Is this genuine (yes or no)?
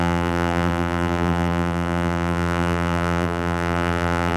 no